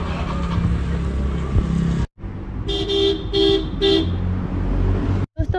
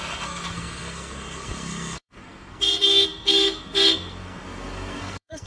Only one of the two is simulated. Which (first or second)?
second